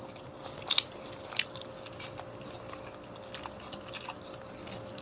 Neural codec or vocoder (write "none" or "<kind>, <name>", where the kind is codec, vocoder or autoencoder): none